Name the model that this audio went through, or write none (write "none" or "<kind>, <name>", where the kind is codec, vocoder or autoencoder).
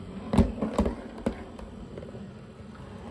none